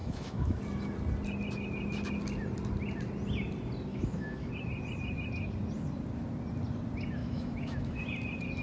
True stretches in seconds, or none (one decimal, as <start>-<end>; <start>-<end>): 0.6-3.9; 4.5-7.2; 8.0-8.6

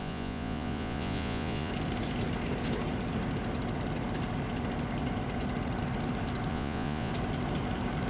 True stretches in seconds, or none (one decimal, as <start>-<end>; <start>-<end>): 1.7-6.5; 7.1-8.1

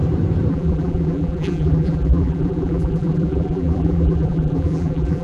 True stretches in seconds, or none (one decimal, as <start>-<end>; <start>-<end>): 0.0-0.5

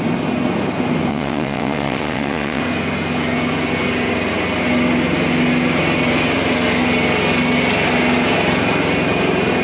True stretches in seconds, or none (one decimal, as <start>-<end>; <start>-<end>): 0.0-1.1; 2.6-9.6

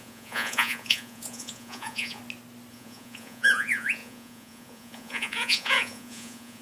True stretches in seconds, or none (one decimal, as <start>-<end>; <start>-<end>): 2.2-2.7

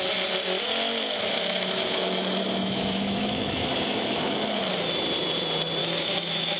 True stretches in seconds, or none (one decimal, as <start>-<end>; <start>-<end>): 0.0-1.3; 4.6-5.8

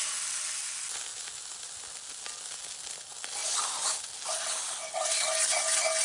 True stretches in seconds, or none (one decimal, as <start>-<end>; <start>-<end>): 0.0-6.0

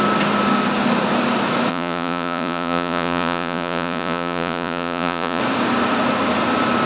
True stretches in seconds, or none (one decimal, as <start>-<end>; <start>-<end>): 0.0-1.7; 5.4-6.9